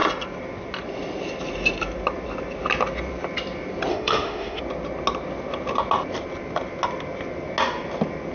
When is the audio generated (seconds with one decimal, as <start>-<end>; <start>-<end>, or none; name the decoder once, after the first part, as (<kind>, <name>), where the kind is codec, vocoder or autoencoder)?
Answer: 3.9-4.6 (autoencoder, DAC-VAE)